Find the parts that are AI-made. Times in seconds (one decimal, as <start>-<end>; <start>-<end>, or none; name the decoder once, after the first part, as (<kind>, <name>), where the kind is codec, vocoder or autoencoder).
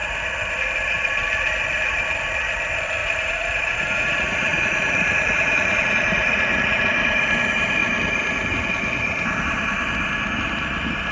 3.0-6.8 (vocoder, Vocos)